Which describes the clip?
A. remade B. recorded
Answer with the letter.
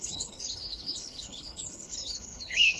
A